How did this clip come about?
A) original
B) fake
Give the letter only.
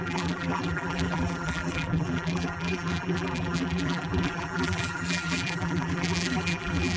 B